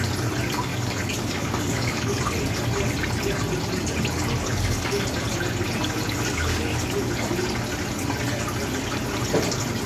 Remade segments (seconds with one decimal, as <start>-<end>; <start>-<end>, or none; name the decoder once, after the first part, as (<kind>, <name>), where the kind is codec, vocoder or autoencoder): 0.7-2.2 (codec, DAC); 4.5-5.0